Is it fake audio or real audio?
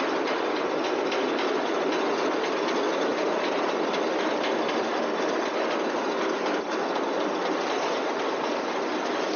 real